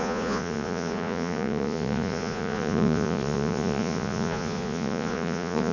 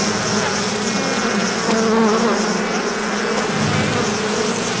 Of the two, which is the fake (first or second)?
first